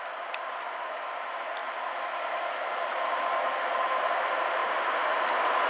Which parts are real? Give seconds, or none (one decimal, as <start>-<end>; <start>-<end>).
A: 0.0-5.7